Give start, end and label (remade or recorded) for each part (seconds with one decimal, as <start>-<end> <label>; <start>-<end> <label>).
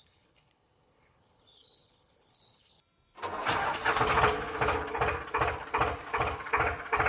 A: 0.0-2.7 remade; 2.7-7.1 recorded